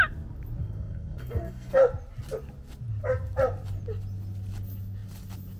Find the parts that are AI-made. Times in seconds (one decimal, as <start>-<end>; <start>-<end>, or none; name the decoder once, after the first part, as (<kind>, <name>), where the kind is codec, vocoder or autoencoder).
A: 0.6-1.8 (codec, SNAC)